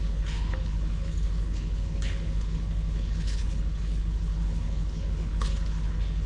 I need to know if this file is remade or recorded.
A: remade